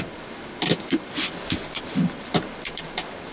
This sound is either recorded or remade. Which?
recorded